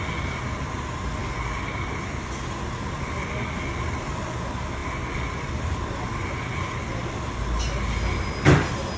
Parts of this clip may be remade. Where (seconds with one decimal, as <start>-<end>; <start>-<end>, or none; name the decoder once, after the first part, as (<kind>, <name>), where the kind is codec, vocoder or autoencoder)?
none